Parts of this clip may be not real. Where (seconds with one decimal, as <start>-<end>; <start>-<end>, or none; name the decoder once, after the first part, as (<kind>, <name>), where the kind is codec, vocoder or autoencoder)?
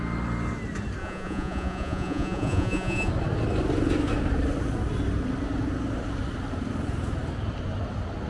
1.0-3.1 (vocoder, Vocos)